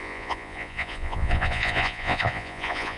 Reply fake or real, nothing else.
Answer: fake